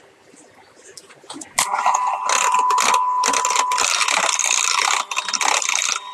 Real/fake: real